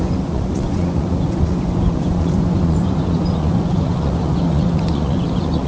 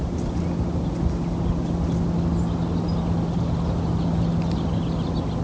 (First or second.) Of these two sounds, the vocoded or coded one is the first